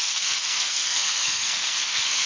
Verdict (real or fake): fake